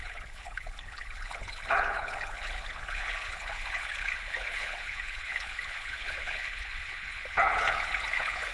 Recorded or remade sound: remade